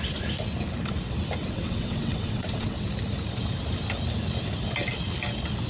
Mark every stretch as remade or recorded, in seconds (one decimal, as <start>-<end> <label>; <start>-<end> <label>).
0.0-1.4 recorded; 1.4-2.9 remade; 2.9-5.7 recorded